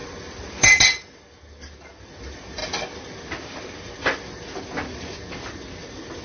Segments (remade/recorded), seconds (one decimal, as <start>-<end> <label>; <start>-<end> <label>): 0.0-6.2 recorded